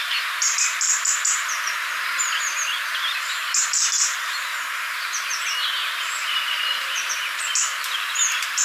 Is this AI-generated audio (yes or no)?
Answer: yes